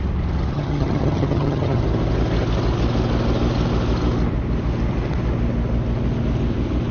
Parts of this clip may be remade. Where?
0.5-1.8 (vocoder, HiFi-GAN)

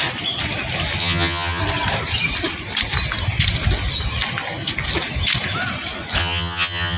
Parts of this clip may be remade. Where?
1.0-1.6 (vocoder, HiFi-GAN); 6.2-7.0

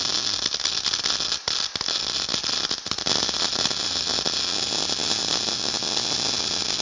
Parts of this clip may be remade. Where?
none